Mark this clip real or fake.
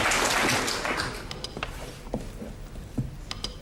real